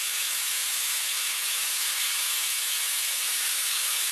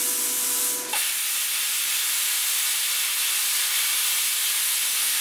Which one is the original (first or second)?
second